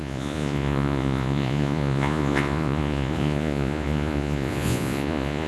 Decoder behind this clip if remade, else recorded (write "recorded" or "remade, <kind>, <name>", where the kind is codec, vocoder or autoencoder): remade, vocoder, Vocos